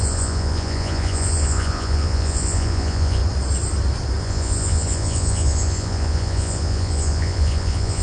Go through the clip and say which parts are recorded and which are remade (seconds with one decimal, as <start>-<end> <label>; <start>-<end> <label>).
0.0-3.2 remade; 3.2-4.2 recorded; 4.2-8.0 remade